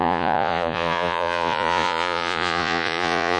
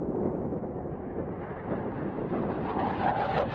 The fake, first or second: first